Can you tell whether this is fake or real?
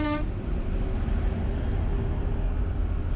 real